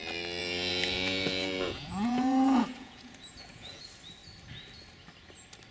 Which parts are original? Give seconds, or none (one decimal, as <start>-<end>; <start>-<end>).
0.0-0.4; 3.8-5.7

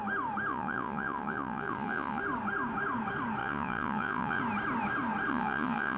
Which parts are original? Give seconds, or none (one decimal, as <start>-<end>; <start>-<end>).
0.0-0.5; 2.2-3.4; 4.4-5.3

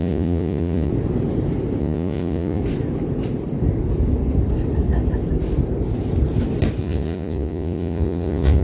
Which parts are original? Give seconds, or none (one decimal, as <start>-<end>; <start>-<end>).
0.9-1.8; 2.6-6.8

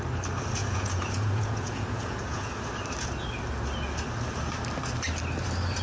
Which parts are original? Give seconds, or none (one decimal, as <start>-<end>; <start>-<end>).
0.0-0.6; 2.5-5.8